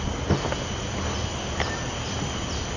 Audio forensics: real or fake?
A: real